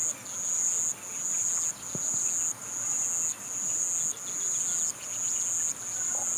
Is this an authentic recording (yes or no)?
yes